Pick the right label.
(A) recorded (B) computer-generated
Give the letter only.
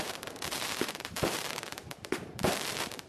B